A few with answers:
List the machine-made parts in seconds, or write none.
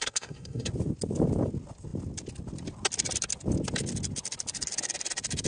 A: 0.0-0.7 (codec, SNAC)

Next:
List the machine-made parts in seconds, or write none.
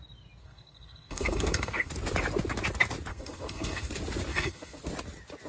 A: 0.4-1.9 (codec, SNAC); 3.1-3.9; 4.3-4.8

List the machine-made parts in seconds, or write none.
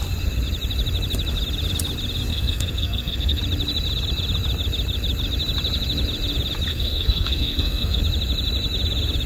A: 2.3-3.4 (codec, SNAC); 6.7-8.0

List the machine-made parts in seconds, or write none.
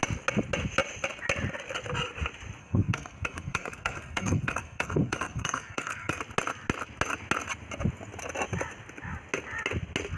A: 2.6-6.2 (codec, SNAC)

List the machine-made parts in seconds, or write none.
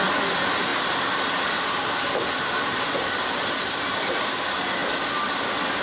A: none